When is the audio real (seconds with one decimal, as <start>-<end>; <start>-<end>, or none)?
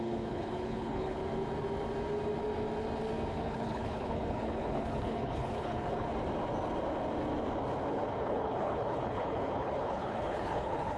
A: 1.2-3.3; 6.1-7.9